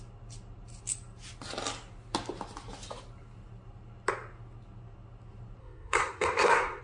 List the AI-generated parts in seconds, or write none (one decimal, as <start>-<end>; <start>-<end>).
5.6-6.8